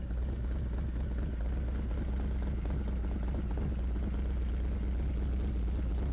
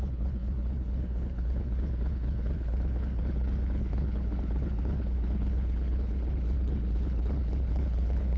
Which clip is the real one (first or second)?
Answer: first